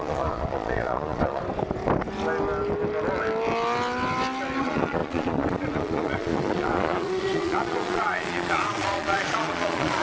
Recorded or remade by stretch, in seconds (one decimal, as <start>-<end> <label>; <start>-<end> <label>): 0.0-1.4 remade; 1.4-4.6 recorded; 4.6-10.0 remade

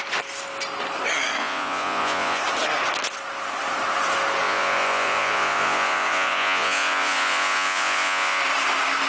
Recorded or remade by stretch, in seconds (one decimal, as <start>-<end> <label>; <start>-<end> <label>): 0.0-1.4 recorded; 1.4-2.4 remade; 2.4-4.4 recorded; 4.4-8.4 remade; 8.4-9.1 recorded

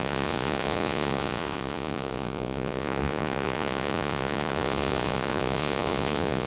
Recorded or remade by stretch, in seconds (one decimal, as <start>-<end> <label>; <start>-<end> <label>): 0.0-6.5 remade